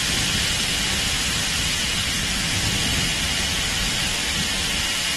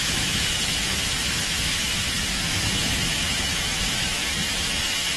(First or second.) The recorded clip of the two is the first